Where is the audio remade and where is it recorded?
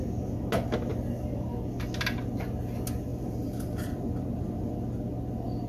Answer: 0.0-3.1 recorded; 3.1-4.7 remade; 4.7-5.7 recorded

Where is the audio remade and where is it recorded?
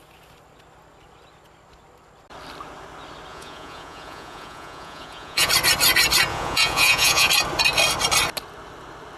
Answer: 0.0-3.3 recorded; 3.3-5.5 remade; 5.5-6.3 recorded; 6.3-7.3 remade; 7.3-9.2 recorded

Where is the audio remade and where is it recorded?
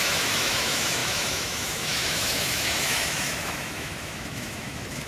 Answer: 0.0-5.1 remade